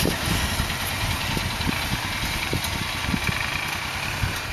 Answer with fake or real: real